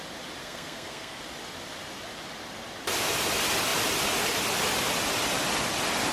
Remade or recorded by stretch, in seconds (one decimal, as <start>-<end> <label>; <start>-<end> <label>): 0.0-0.4 recorded; 0.4-1.2 remade; 1.2-6.1 recorded